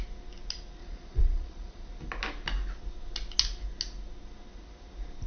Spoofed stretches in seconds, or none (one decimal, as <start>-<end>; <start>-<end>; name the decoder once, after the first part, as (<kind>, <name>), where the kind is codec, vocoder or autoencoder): 0.8-1.9 (vocoder, Vocos)